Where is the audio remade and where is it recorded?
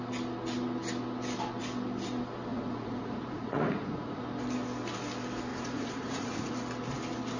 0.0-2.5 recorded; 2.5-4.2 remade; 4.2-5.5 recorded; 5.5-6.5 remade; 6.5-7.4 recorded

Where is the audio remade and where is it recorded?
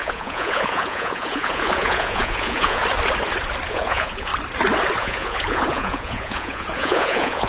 0.0-2.8 remade; 2.8-3.7 recorded; 3.7-4.3 remade; 4.3-5.0 recorded; 5.0-7.5 remade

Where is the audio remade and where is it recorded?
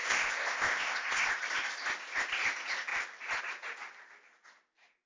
0.0-1.3 remade; 1.3-5.1 recorded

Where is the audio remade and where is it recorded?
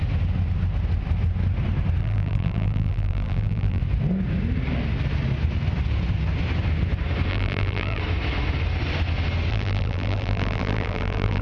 0.0-2.0 recorded; 2.0-3.8 remade; 3.8-7.3 recorded; 7.3-8.0 remade; 8.0-9.5 recorded; 9.5-11.4 remade